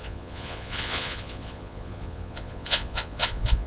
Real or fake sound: fake